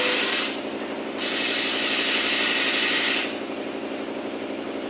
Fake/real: real